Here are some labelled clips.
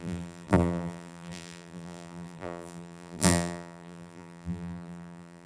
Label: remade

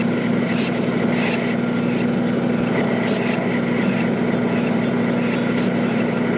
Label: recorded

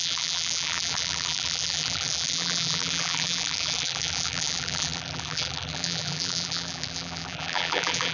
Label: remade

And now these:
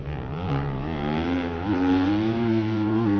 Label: remade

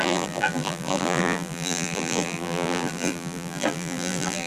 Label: remade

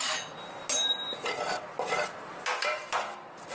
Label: recorded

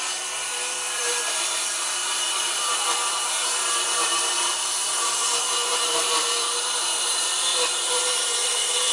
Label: remade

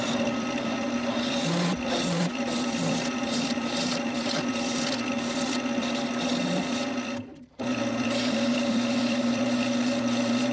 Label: remade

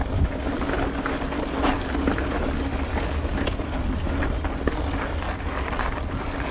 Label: recorded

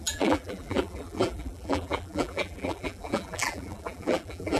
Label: remade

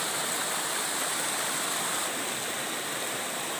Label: recorded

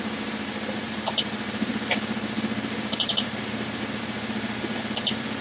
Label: remade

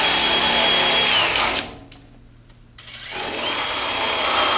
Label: recorded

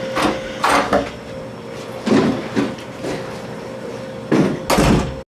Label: recorded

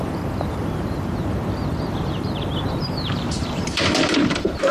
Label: remade